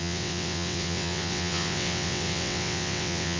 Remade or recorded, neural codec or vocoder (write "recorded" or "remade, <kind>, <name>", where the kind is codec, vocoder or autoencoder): remade, vocoder, WaveNeXt